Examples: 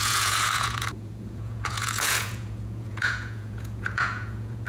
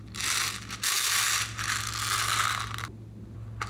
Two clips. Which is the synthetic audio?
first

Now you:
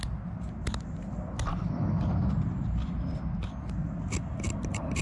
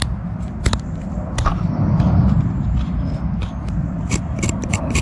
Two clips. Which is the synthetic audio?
second